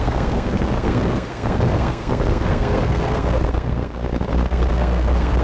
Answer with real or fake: fake